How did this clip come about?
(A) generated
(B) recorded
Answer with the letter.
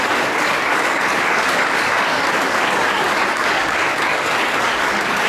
A